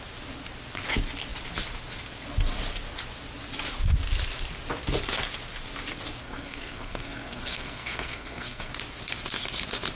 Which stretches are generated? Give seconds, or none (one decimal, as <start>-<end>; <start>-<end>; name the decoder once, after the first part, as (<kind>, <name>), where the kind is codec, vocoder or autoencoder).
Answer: 6.2-8.7 (codec, SNAC)